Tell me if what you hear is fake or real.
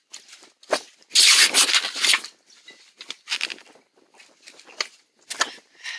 real